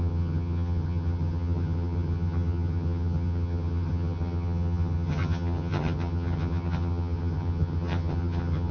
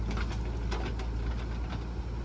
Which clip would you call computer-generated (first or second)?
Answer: first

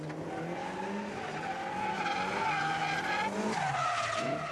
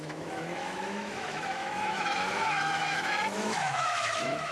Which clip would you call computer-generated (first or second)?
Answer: second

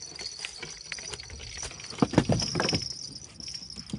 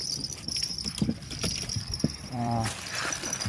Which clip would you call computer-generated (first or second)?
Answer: second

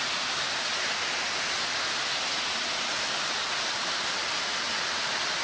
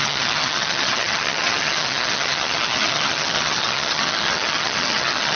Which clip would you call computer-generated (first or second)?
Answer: second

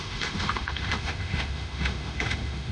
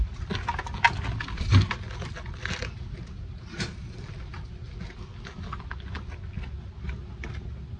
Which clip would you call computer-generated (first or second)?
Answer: first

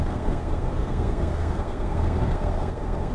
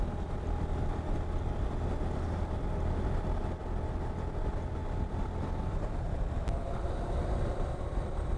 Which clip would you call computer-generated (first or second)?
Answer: first